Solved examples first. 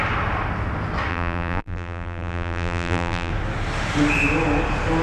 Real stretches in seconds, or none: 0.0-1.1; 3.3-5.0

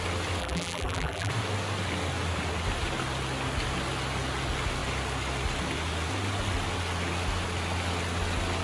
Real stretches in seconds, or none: 0.0-0.4; 1.3-8.6

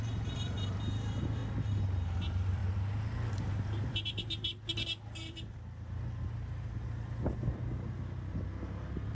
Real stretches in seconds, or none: 1.4-2.2; 2.6-3.4; 4.5-9.1

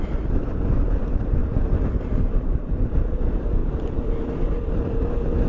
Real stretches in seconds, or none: 1.4-2.0

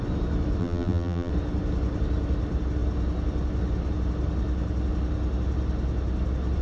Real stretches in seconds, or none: 0.0-0.6; 1.3-6.6

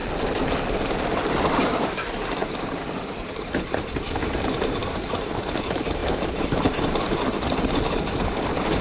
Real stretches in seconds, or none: 0.0-0.7; 2.4-3.1

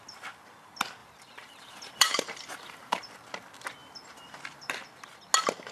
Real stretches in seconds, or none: 0.0-1.0; 3.0-5.7

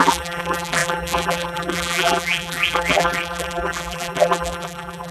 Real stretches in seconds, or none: none